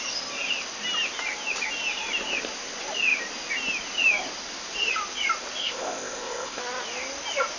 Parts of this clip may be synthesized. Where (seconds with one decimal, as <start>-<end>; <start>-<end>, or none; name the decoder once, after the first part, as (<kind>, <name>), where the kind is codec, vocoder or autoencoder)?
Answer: 5.6-6.6 (codec, ZipCodec)